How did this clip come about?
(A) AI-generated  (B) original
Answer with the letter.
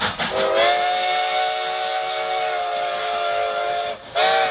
B